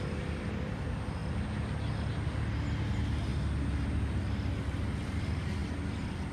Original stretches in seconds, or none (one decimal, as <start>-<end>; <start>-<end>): 0.0-6.3